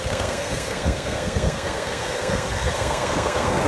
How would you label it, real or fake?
fake